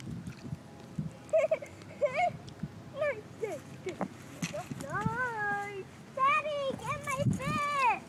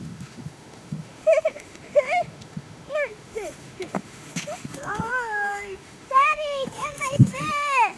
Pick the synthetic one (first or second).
second